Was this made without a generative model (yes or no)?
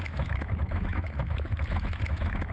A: no